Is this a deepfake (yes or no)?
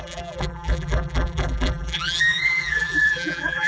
yes